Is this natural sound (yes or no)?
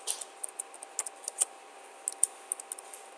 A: yes